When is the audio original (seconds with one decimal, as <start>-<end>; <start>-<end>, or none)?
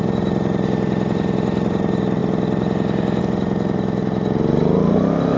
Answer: 0.0-5.4